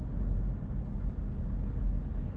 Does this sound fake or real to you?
real